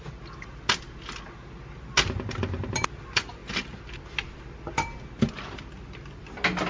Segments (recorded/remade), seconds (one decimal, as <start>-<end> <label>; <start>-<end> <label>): 0.0-6.7 recorded